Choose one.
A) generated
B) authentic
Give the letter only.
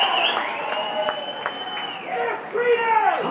B